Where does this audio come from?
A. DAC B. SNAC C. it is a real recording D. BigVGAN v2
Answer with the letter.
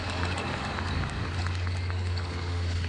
A